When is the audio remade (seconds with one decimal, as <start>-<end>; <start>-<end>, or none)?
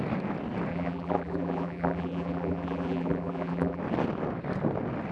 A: 0.7-3.8